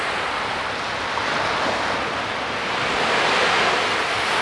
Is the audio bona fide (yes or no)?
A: yes